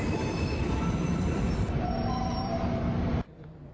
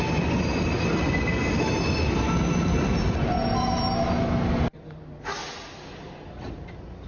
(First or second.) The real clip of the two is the second